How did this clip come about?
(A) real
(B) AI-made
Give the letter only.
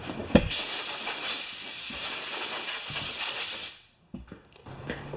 B